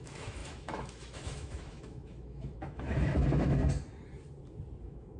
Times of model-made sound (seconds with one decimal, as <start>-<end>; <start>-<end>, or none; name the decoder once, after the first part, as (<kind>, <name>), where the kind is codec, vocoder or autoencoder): 0.0-3.6 (autoencoder, DAC-VAE); 4.8-5.2

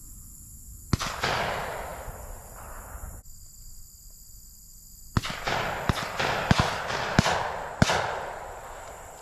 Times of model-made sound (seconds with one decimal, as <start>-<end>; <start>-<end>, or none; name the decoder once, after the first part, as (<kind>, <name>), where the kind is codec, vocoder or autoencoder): none

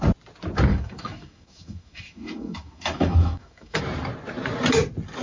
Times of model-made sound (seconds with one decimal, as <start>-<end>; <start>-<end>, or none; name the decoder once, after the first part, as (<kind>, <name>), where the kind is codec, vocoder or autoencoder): 0.7-3.8 (autoencoder, DAC-VAE)

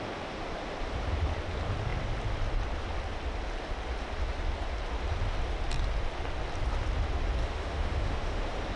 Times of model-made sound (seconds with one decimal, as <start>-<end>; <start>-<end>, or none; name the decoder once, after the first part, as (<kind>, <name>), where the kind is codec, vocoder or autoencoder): 7.4-8.4 (autoencoder, DAC-VAE)